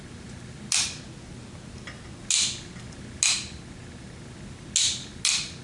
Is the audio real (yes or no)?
yes